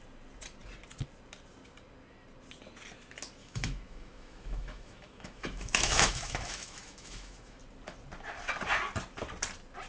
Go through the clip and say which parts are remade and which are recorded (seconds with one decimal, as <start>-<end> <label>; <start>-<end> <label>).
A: 0.0-3.4 recorded; 3.4-7.6 remade; 7.6-9.9 recorded